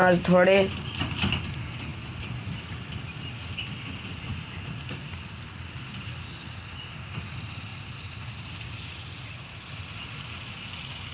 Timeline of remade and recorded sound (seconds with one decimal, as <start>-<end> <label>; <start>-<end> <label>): 0.0-11.1 recorded